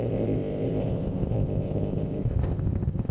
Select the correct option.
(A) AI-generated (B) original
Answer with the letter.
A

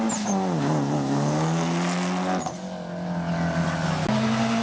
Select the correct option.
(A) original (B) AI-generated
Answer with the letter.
A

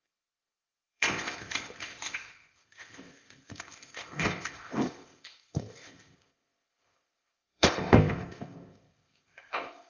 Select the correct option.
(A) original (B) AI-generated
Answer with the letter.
B